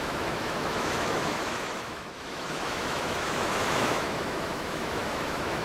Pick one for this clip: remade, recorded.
remade